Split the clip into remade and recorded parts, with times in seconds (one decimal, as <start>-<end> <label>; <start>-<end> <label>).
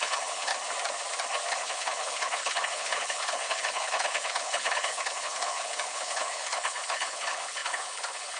0.0-0.5 remade; 0.5-1.5 recorded; 1.5-8.4 remade